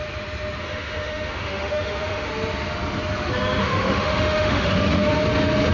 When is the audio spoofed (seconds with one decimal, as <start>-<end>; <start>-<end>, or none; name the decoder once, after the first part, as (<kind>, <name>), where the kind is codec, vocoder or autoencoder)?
0.6-2.3 (autoencoder, DAC-VAE); 3.6-5.0